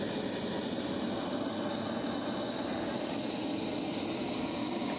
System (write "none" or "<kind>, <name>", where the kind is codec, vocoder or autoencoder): none